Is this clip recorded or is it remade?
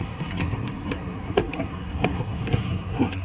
remade